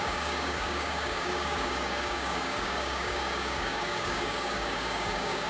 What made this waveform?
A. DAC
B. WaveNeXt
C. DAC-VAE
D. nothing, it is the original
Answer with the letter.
A